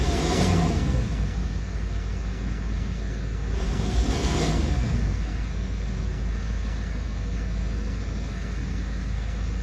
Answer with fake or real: fake